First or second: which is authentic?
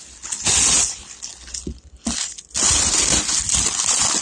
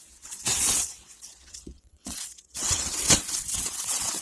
first